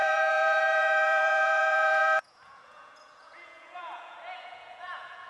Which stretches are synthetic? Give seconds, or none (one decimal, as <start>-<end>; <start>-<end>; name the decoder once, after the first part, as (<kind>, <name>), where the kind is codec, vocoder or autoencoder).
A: 0.0-5.3 (vocoder, Vocos)